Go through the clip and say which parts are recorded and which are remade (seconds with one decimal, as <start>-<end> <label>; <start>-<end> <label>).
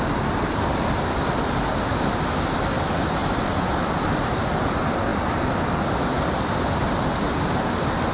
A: 0.0-8.1 recorded